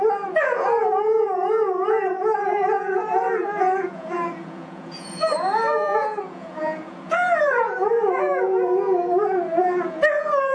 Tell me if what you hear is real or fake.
fake